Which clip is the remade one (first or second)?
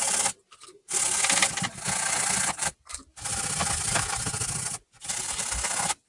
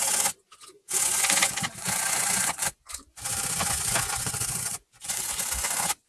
second